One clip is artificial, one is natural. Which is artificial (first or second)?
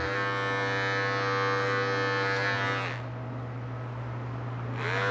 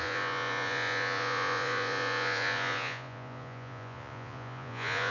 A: second